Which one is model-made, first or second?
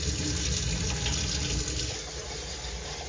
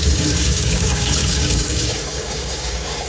second